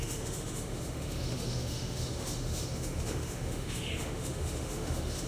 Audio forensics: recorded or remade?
remade